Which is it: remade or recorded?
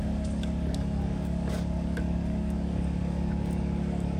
remade